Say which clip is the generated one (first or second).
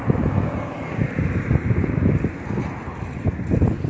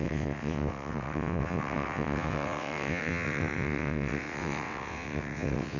second